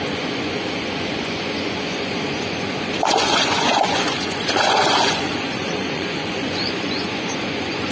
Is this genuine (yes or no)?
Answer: no